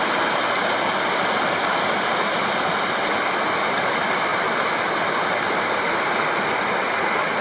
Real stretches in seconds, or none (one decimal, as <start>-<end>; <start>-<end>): 0.0-7.4